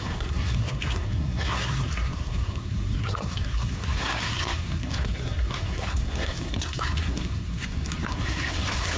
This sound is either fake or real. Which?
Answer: fake